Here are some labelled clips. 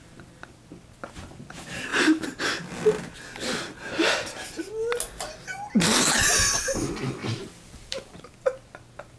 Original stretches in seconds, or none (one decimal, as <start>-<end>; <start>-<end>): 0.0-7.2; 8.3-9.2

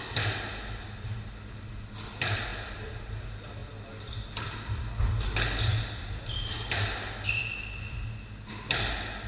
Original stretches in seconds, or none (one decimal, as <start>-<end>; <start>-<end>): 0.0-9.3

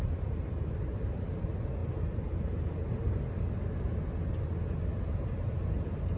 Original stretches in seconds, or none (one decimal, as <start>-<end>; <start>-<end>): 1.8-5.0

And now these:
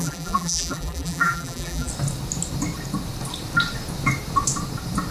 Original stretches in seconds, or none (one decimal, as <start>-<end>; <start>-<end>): 1.9-5.1